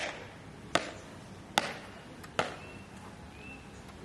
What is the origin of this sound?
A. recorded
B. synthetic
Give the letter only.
A